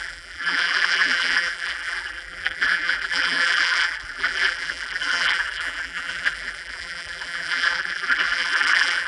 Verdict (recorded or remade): remade